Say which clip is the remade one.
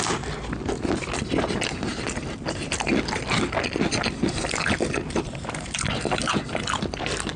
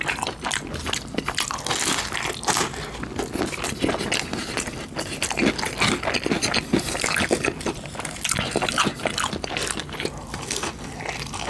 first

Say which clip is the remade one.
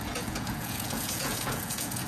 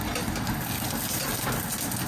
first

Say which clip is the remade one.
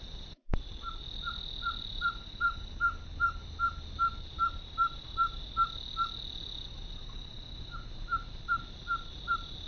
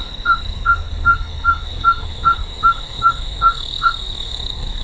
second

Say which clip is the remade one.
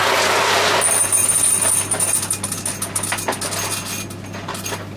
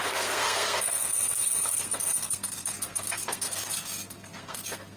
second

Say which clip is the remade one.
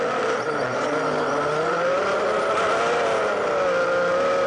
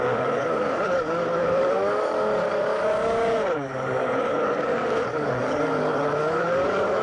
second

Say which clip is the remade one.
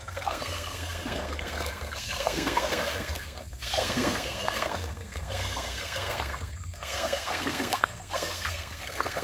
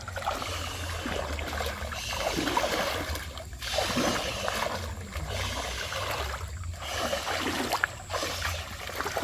first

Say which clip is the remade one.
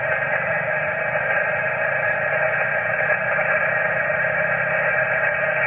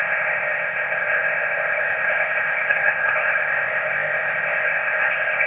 second